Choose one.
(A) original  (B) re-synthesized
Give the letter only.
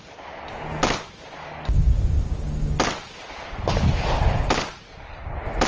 A